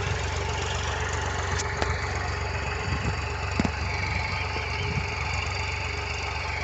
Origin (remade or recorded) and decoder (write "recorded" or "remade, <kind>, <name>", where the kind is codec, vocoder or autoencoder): recorded